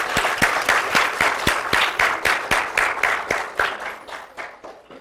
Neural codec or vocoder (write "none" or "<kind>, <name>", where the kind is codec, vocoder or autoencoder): none